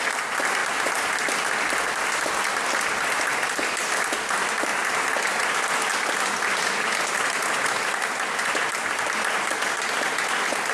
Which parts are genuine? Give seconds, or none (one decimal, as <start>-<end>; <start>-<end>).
0.0-10.7